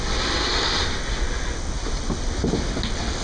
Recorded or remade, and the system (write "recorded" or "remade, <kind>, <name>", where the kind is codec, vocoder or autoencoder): recorded